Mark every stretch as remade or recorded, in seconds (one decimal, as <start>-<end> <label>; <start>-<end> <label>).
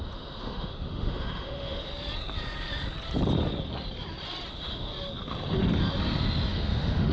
0.0-1.9 remade; 1.9-4.5 recorded; 4.5-4.9 remade; 4.9-6.5 recorded; 6.5-7.1 remade